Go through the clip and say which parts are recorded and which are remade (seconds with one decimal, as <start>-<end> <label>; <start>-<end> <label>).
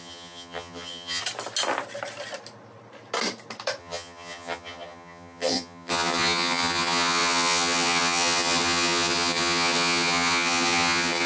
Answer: 0.0-1.2 remade; 1.2-3.8 recorded; 3.8-11.3 remade